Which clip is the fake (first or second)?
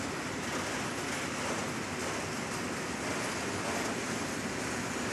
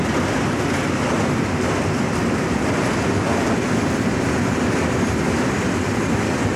second